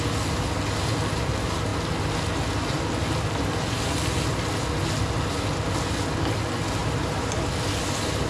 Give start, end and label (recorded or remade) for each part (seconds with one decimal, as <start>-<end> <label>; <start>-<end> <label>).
0.0-6.8 recorded; 6.8-7.5 remade; 7.5-8.3 recorded